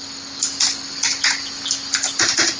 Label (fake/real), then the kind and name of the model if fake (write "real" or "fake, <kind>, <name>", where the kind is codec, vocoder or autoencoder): real